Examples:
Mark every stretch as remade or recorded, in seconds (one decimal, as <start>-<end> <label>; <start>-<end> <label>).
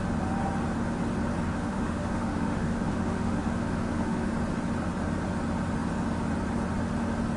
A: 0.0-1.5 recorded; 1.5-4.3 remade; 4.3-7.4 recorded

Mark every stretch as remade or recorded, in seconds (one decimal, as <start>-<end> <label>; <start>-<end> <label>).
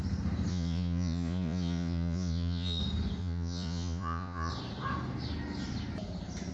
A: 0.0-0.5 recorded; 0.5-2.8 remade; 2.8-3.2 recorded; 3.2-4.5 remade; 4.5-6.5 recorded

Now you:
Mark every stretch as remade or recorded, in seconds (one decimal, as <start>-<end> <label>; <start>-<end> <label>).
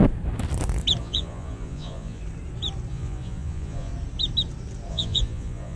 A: 0.0-1.0 recorded; 1.0-2.2 remade; 2.2-2.9 recorded; 2.9-3.9 remade; 3.9-4.9 recorded; 4.9-5.8 remade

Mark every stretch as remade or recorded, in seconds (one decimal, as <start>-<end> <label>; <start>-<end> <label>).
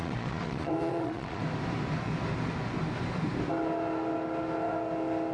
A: 0.0-1.4 remade; 1.4-5.3 recorded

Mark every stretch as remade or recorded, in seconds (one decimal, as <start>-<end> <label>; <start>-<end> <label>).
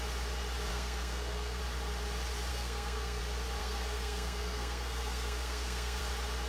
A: 0.0-0.7 recorded; 0.7-1.6 remade; 1.6-2.5 recorded; 2.5-3.2 remade; 3.2-3.6 recorded; 3.6-6.0 remade; 6.0-6.5 recorded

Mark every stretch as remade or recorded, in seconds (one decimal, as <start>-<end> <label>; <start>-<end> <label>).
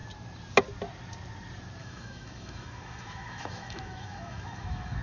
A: 0.0-1.8 recorded; 1.8-5.0 remade